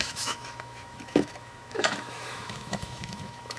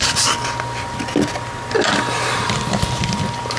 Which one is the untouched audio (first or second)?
second